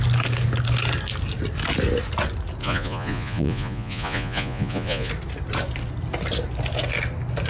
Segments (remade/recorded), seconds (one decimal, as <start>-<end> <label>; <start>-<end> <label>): 0.0-2.6 recorded; 2.6-5.1 remade; 5.1-7.5 recorded